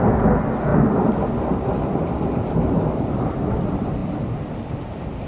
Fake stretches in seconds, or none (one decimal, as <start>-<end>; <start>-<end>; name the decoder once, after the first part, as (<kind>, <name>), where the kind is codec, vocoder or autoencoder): none